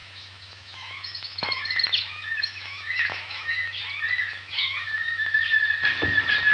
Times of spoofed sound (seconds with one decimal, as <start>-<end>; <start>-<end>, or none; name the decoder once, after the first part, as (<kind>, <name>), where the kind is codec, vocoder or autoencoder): 0.0-3.8 (autoencoder, DAC-VAE); 4.2-5.6